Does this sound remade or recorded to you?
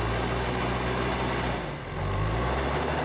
recorded